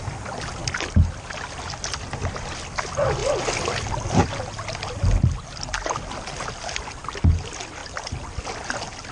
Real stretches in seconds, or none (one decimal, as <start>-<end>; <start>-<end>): 0.0-9.1